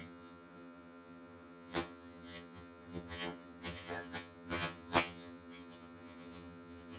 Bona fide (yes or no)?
no